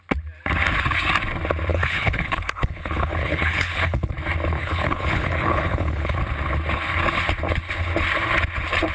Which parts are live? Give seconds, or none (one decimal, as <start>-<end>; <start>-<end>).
0.0-1.7; 4.1-4.6; 6.2-8.9